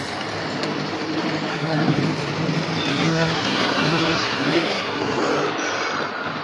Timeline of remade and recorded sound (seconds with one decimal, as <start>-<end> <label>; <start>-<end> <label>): 0.0-1.5 recorded; 1.5-2.0 remade; 2.0-2.9 recorded; 2.9-5.2 remade; 5.2-6.4 recorded